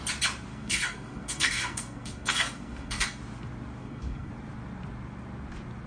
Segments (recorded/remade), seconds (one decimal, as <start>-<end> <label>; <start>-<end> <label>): 0.0-0.5 recorded; 0.5-3.2 remade; 3.2-3.8 recorded; 3.8-4.3 remade; 4.3-5.9 recorded